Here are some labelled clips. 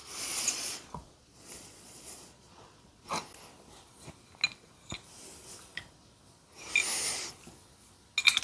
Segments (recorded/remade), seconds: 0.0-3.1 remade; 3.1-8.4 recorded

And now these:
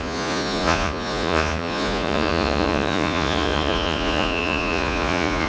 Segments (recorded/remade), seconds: 0.0-5.5 remade

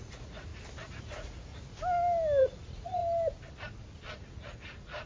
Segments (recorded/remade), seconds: 0.0-0.5 remade; 0.5-1.0 recorded; 1.0-1.5 remade; 1.5-2.4 recorded; 2.4-3.0 remade; 3.0-4.2 recorded; 4.2-5.1 remade

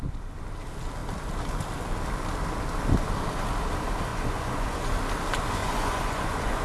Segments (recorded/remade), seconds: 0.0-4.1 recorded; 4.1-4.9 remade; 4.9-5.6 recorded; 5.6-6.6 remade

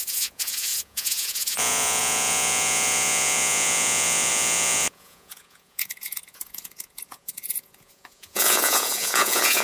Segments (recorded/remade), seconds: 0.0-9.6 remade

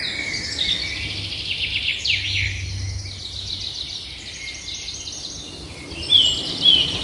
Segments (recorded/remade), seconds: 0.0-7.0 recorded

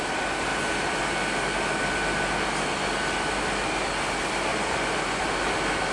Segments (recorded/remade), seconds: 0.0-4.5 recorded; 4.5-5.2 remade; 5.2-5.9 recorded

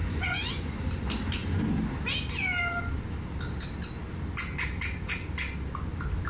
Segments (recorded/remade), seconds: 0.0-0.8 remade; 0.8-6.3 recorded